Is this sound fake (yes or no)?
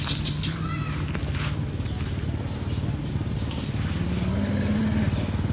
no